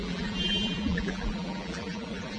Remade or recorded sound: remade